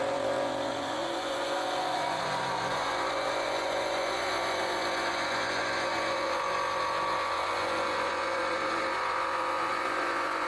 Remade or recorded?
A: remade